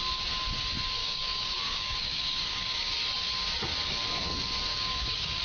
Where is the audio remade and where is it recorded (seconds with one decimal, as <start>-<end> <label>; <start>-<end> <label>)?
0.0-1.0 recorded; 1.0-2.9 remade; 2.9-4.7 recorded; 4.7-5.4 remade